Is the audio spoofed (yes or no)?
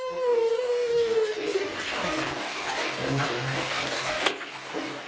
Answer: yes